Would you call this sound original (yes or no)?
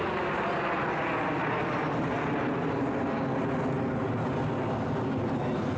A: yes